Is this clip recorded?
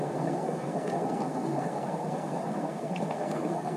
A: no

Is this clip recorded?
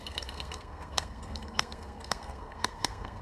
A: no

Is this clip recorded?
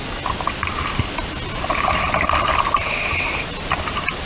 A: yes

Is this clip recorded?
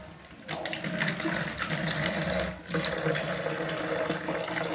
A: yes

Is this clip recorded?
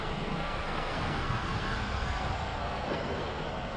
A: no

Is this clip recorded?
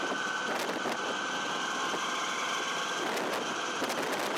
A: yes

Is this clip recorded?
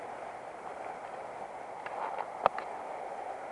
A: yes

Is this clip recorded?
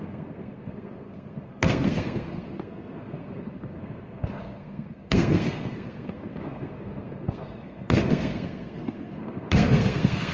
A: no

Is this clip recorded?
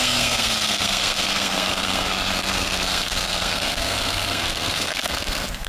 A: no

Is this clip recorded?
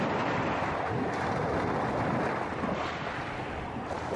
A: yes